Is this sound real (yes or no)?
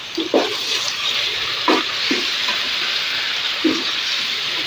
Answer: no